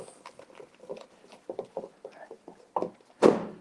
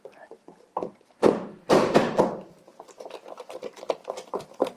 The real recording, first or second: first